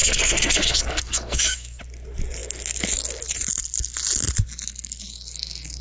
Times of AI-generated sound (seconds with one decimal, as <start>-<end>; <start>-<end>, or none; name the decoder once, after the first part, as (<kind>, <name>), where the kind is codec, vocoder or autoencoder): 0.0-1.8 (codec, SNAC)